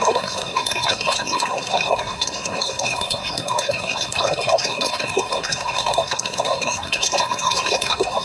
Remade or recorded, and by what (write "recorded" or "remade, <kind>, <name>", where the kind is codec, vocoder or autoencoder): remade, codec, SNAC